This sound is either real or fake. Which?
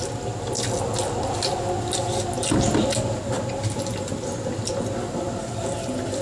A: real